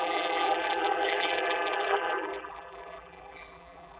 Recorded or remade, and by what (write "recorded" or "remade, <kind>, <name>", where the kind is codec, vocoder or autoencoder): remade, vocoder, BigVGAN v2